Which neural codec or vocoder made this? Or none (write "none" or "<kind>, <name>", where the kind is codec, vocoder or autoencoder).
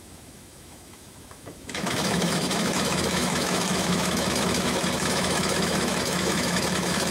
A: autoencoder, DAC-VAE